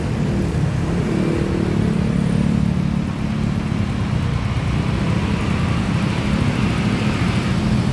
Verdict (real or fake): real